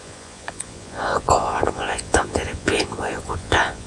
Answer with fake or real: fake